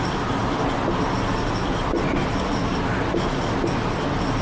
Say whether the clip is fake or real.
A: real